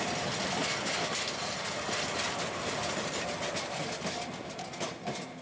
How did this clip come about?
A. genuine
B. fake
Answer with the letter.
A